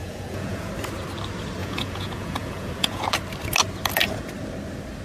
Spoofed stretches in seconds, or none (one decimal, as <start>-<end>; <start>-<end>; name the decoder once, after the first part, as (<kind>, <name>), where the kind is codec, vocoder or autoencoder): 0.0-0.7 (vocoder, Vocos); 1.6-3.0